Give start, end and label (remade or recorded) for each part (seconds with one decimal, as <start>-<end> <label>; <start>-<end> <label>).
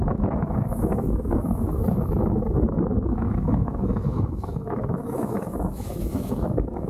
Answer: 0.0-6.9 remade